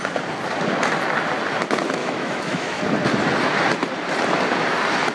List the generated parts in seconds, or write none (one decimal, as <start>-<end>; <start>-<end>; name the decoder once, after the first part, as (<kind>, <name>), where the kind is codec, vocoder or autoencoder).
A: 2.0-2.8 (autoencoder, DAC-VAE)